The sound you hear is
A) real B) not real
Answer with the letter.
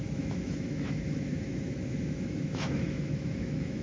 B